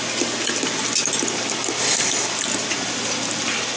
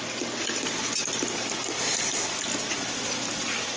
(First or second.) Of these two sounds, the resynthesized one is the second